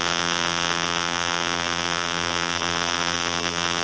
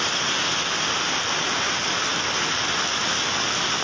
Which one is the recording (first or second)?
second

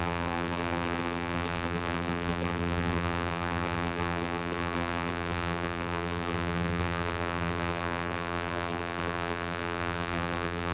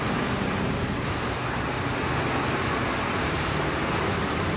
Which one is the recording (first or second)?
second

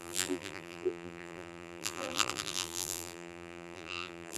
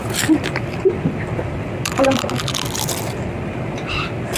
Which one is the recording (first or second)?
second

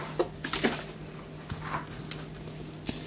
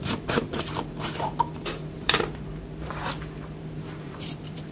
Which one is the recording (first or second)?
first